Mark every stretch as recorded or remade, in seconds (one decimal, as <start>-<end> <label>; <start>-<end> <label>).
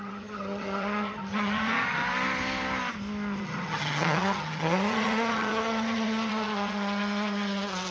0.0-2.0 remade; 2.0-3.4 recorded; 3.4-7.9 remade